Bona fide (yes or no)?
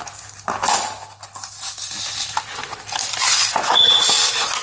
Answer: yes